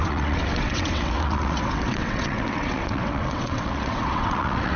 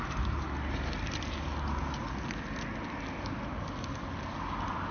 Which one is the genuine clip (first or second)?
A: second